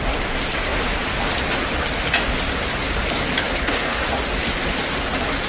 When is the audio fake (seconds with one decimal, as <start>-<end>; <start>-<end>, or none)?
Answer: 3.3-4.0